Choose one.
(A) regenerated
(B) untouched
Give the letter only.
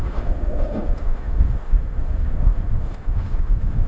A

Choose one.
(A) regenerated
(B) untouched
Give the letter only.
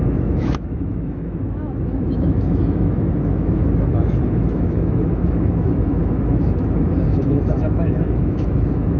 A